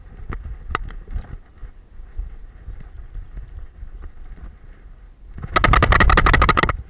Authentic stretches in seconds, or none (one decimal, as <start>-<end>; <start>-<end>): 0.0-6.9